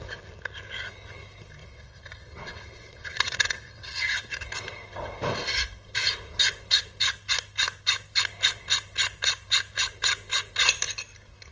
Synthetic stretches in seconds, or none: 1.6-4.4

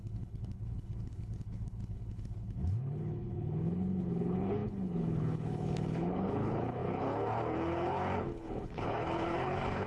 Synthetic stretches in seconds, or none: 0.0-9.9

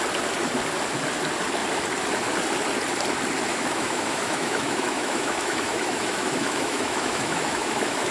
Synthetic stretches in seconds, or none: 3.5-8.1

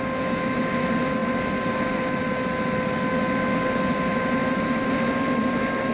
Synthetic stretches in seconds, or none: none

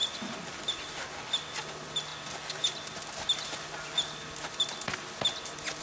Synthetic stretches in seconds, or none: none

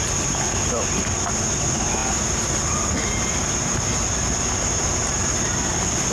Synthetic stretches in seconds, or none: none

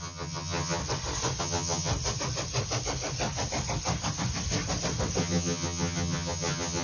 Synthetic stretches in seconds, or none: 0.0-0.8; 1.4-1.9; 5.2-6.8

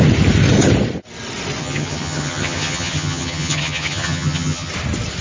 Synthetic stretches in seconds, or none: 1.6-4.7